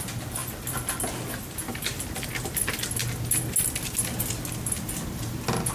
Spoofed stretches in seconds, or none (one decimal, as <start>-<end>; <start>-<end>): none